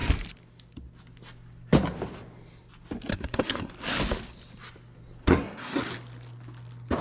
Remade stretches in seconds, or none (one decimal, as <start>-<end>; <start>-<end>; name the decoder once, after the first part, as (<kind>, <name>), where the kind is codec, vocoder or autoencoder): 3.1-3.7 (codec, SNAC); 5.2-5.8